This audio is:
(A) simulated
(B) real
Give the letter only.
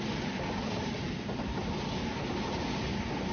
B